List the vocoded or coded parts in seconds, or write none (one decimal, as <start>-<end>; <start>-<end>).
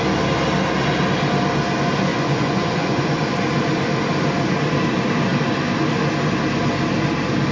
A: 2.1-3.0